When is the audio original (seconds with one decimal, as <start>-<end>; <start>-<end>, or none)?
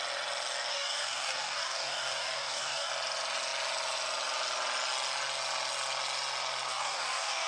0.0-0.7; 2.9-6.7